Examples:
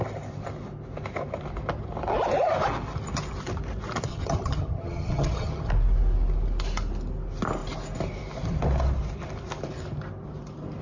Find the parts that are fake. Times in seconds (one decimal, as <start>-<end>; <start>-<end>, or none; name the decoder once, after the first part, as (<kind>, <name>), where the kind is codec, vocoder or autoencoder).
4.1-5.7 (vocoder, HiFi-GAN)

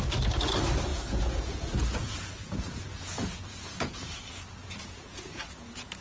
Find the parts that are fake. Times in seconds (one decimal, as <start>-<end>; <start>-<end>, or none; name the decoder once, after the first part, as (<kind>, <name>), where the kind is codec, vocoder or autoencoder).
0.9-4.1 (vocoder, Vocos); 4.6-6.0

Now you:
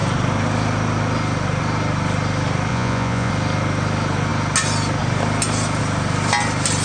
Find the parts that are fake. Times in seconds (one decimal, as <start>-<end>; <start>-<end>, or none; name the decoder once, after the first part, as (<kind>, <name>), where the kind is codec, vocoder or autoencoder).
2.7-3.3 (vocoder, Vocos)

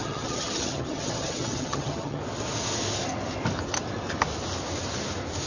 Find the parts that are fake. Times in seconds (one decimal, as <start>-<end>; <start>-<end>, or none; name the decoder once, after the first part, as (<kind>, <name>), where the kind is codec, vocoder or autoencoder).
0.0-2.2 (vocoder, HiFi-GAN)